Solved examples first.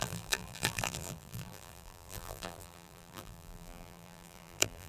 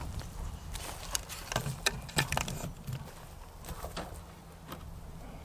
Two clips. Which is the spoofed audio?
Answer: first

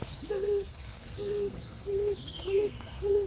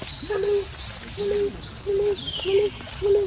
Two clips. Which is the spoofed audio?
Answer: first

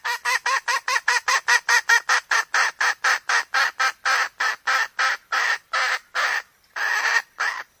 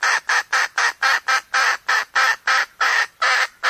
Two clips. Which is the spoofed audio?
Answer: first